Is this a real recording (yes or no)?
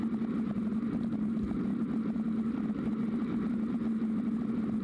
yes